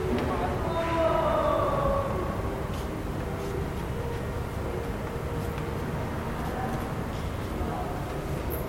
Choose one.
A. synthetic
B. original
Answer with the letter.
B